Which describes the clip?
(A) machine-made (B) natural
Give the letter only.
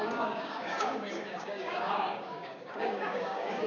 A